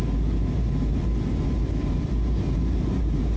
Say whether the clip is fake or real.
real